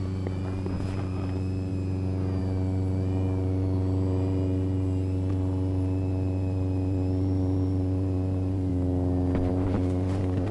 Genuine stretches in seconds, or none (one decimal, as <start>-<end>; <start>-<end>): 1.7-2.4; 8.7-9.5